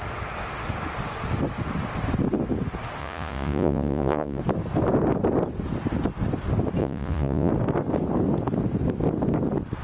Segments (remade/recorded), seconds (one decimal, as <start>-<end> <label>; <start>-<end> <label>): 0.0-3.0 recorded; 3.0-4.4 remade; 4.4-6.8 recorded; 6.8-7.5 remade; 7.5-9.8 recorded

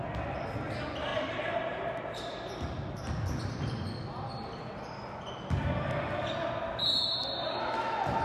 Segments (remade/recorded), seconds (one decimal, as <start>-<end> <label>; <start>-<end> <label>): 0.0-1.1 recorded; 1.1-2.9 remade; 2.9-8.2 recorded

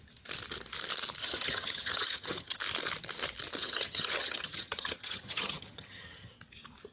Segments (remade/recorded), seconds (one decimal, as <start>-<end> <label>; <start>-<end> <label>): 0.0-1.2 recorded; 1.2-2.6 remade; 2.6-3.6 recorded; 3.6-6.3 remade; 6.3-6.9 recorded

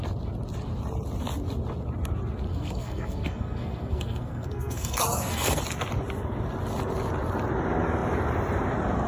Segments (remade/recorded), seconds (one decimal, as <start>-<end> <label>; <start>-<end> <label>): 0.0-2.5 recorded; 2.5-5.6 remade; 5.6-9.1 recorded

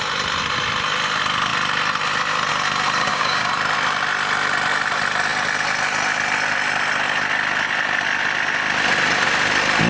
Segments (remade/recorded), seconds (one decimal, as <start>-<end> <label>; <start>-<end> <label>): 0.0-3.0 recorded; 3.0-3.5 remade; 3.5-9.9 recorded